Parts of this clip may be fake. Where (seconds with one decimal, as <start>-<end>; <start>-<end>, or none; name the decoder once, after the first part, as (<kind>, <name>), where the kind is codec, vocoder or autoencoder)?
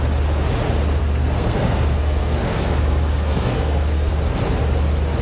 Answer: 1.0-4.1 (codec, SNAC)